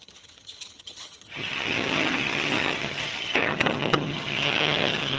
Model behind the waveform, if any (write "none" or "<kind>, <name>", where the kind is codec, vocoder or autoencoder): vocoder, HiFi-GAN